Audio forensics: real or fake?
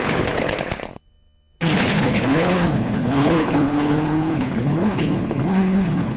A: fake